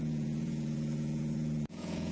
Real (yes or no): no